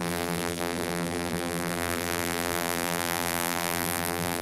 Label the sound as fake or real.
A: fake